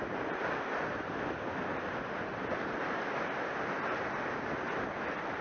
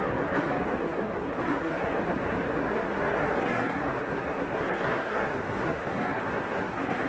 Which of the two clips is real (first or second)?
first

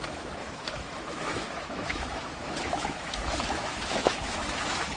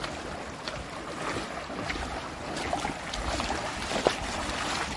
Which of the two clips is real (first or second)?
second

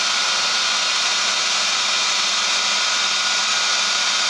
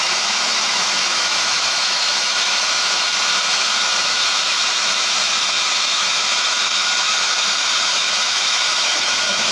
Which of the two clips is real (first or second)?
first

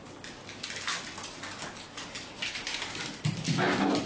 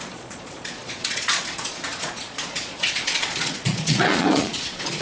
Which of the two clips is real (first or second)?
first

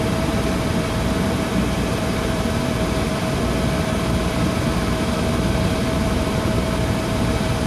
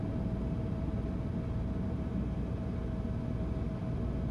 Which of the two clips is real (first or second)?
second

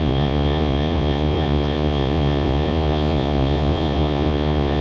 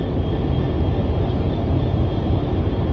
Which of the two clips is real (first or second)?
second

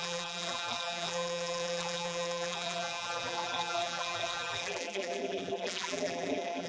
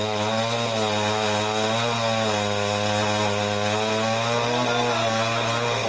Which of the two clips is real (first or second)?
second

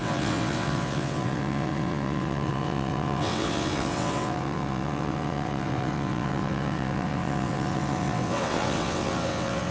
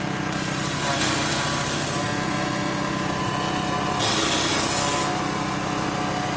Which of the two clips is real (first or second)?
second